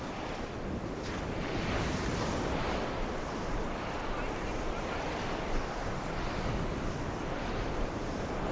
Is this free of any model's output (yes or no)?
yes